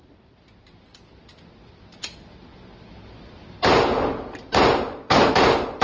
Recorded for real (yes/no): yes